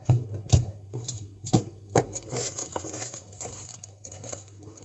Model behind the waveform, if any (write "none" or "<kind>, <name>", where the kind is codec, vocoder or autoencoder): codec, SNAC